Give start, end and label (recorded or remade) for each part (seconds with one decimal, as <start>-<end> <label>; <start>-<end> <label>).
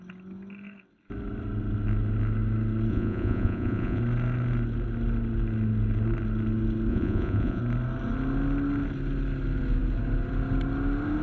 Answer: 0.0-2.9 recorded; 2.9-4.0 remade; 4.0-6.9 recorded; 6.9-7.6 remade; 7.6-11.2 recorded